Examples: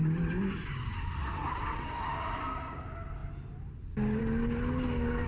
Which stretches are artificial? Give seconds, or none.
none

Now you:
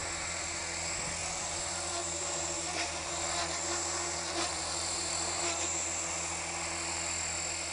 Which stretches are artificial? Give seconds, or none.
0.0-0.6 (vocoder, BigVGAN v2); 1.2-3.1; 4.5-5.4

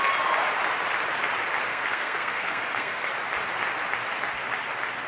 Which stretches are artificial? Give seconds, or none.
1.7-3.1 (codec, SNAC)

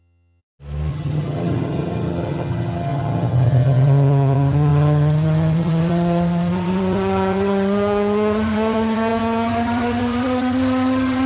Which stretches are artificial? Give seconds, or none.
0.0-0.4 (vocoder, HiFi-GAN); 0.9-11.3

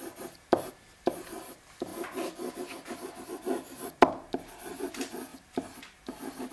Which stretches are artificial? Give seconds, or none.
0.0-1.9 (vocoder, BigVGAN v2); 2.5-6.5